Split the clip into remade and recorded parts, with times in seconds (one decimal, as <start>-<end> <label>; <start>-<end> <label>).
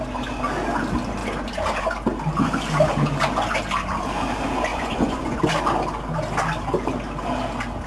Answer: 0.0-4.7 recorded; 4.7-5.4 remade; 5.4-7.9 recorded